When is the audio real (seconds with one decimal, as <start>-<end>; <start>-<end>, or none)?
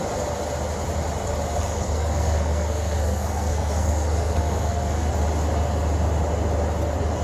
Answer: 0.0-1.6; 5.1-7.2